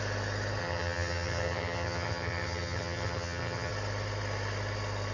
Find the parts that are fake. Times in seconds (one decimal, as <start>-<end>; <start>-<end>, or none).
0.6-3.7